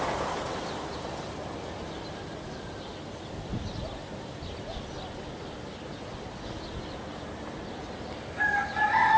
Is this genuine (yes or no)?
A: yes